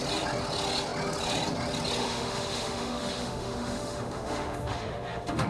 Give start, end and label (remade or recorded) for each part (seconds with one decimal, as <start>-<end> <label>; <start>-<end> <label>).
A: 0.0-2.0 recorded; 2.0-5.5 remade